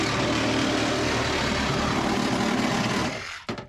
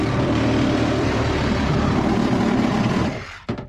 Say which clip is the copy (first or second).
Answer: second